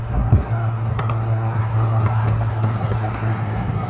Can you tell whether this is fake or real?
fake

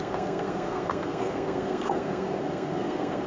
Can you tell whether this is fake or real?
fake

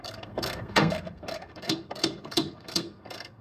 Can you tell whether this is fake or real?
fake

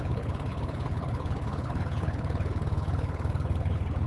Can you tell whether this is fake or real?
fake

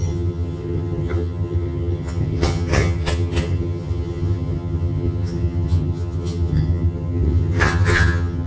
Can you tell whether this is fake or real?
fake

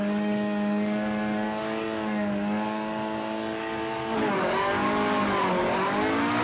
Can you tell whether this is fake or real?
fake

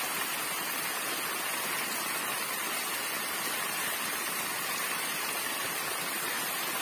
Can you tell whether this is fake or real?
real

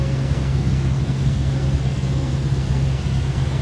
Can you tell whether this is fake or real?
fake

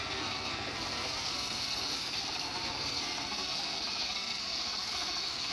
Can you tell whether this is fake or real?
fake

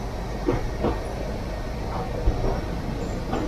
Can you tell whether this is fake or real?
real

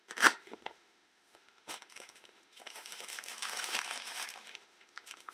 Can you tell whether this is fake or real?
fake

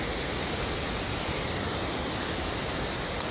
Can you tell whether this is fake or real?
real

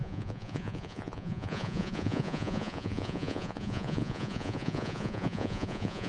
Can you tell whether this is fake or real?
fake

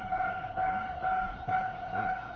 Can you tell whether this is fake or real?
fake